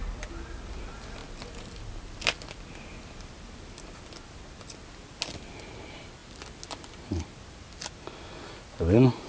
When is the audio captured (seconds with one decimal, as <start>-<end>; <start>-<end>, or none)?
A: 0.0-9.3